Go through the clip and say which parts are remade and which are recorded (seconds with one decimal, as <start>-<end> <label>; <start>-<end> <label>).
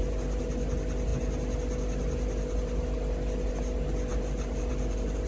0.0-5.3 recorded